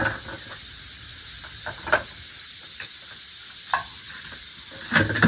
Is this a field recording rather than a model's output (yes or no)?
yes